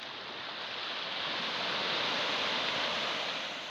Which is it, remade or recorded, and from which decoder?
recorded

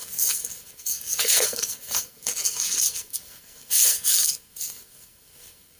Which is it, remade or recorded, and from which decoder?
remade, codec, SNAC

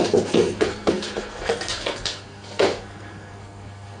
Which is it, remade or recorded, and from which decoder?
remade, codec, SNAC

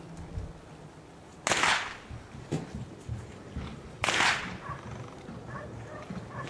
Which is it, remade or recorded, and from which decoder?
recorded